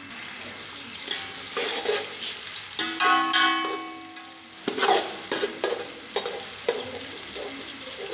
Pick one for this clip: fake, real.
real